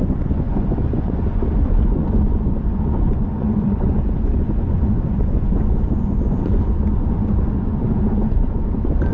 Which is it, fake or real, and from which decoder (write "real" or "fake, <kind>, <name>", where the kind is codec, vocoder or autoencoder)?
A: fake, vocoder, Vocos